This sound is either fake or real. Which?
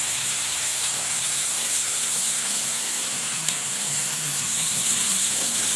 fake